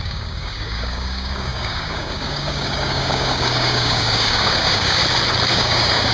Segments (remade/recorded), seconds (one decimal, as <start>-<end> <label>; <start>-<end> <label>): 0.0-5.0 remade; 5.0-5.5 recorded; 5.5-6.1 remade